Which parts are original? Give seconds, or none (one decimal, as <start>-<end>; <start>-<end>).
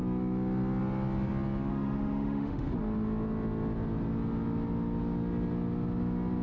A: 0.0-1.7; 2.7-6.4